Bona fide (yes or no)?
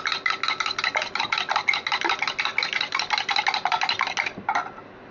yes